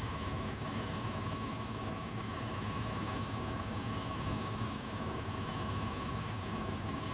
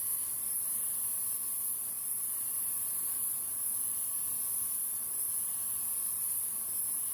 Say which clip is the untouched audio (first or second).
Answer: second